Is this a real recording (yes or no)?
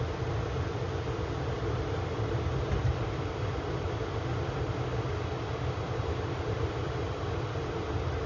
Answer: no